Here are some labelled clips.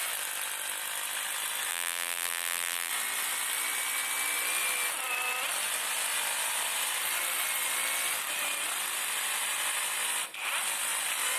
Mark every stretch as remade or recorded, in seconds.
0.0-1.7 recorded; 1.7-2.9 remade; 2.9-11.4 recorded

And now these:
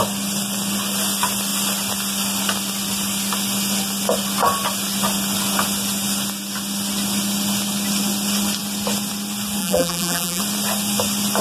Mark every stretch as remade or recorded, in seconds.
0.0-9.6 recorded; 9.6-10.4 remade; 10.4-11.4 recorded

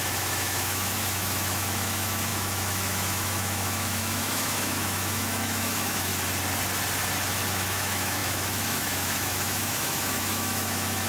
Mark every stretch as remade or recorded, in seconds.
0.0-6.1 remade; 6.1-7.5 recorded; 7.5-11.1 remade

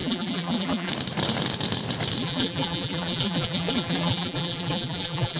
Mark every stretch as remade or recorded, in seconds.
0.0-0.9 remade; 0.9-2.2 recorded; 2.2-5.4 remade